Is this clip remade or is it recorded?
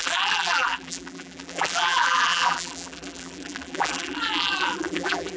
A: remade